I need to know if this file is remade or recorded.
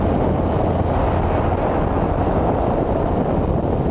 recorded